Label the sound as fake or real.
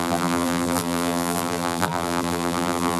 fake